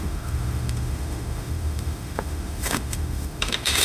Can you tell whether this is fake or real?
fake